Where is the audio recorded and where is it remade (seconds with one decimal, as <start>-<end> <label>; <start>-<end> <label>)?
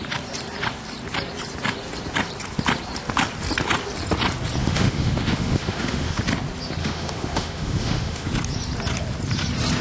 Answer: 0.0-4.6 recorded; 4.6-6.2 remade; 6.2-6.8 recorded; 6.8-8.3 remade; 8.3-9.8 recorded